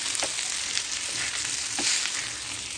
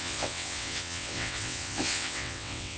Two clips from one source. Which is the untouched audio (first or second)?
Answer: first